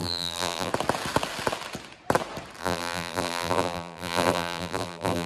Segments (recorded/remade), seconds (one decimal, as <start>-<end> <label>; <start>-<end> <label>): 0.0-0.7 remade; 0.7-2.6 recorded; 2.6-5.3 remade